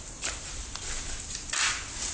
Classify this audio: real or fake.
real